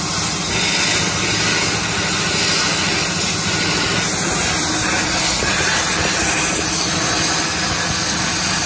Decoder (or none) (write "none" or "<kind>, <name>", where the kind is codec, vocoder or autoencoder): none